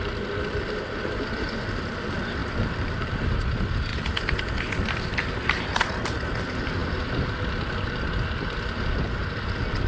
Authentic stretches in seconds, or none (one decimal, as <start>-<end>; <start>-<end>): 0.0-9.9